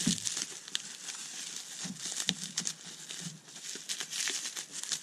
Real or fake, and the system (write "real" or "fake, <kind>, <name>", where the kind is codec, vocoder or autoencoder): real